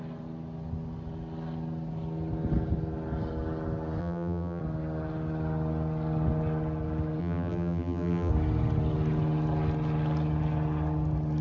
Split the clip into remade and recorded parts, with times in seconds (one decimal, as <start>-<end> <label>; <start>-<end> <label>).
0.0-4.0 recorded; 4.0-4.6 remade; 4.6-7.2 recorded; 7.2-8.3 remade; 8.3-11.4 recorded